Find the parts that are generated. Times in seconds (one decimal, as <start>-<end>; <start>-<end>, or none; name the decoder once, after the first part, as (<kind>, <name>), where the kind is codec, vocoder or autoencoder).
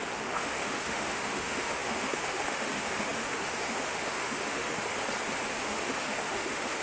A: 0.0-4.9 (autoencoder, DAC-VAE); 5.5-6.8